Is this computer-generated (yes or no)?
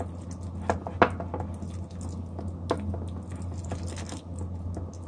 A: no